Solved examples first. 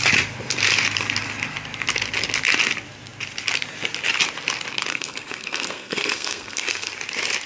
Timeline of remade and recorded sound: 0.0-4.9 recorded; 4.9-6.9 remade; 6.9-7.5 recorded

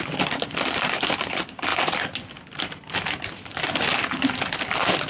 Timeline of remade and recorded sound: 0.0-5.1 recorded

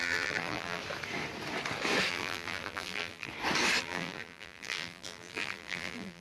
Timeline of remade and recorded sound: 0.0-0.8 remade; 0.8-2.1 recorded; 2.1-3.3 remade; 3.3-3.8 recorded; 3.8-6.2 remade

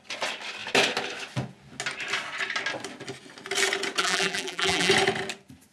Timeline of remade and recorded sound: 0.0-4.0 recorded; 4.0-4.9 remade; 4.9-5.7 recorded

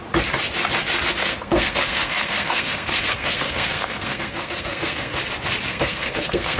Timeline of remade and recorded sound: 0.0-1.2 recorded; 1.2-5.2 remade; 5.2-5.7 recorded; 5.7-6.6 remade